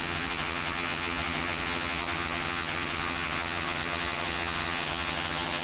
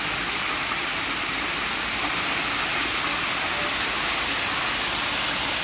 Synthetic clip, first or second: first